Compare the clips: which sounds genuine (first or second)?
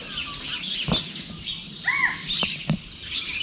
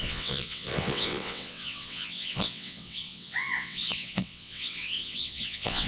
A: first